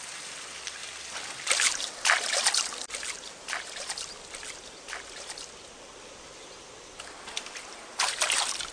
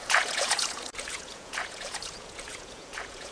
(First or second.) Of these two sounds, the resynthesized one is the second